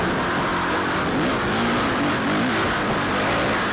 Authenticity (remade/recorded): recorded